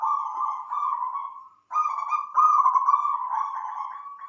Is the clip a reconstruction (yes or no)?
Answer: no